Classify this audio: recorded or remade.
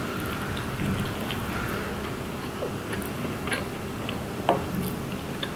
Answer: recorded